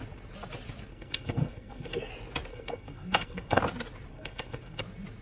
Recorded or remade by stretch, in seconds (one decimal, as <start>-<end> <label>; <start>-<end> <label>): 0.0-0.9 recorded; 0.9-2.1 remade; 2.1-2.5 recorded; 2.5-3.6 remade; 3.6-4.1 recorded; 4.1-4.8 remade; 4.8-5.2 recorded